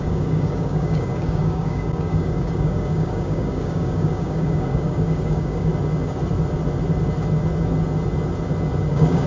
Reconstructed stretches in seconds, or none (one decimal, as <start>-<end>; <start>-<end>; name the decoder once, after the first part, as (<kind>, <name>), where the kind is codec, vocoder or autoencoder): 0.0-5.7 (codec, DAC); 8.9-9.3